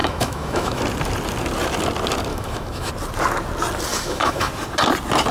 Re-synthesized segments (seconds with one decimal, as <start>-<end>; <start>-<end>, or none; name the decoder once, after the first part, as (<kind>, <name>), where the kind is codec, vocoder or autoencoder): 0.0-0.8 (autoencoder, DAC-VAE); 2.3-2.9; 3.9-4.5